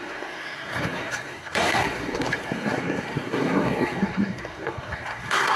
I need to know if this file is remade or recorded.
remade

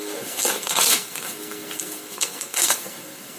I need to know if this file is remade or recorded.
remade